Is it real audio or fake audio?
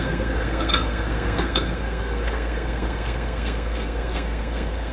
fake